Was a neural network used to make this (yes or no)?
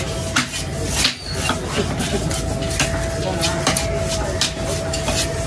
no